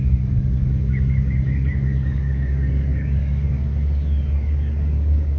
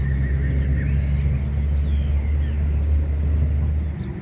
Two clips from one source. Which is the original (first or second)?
second